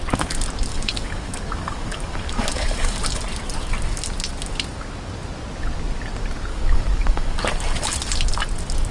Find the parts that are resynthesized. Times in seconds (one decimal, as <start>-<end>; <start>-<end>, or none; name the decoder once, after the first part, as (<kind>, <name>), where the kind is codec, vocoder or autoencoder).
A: 0.7-3.0 (codec, DAC); 6.5-7.5